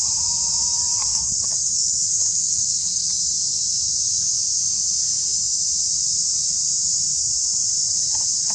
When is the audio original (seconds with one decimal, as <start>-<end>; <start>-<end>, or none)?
0.0-1.1; 3.1-8.5